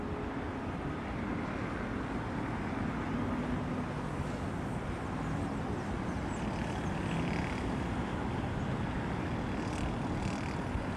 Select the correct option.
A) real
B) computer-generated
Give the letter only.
A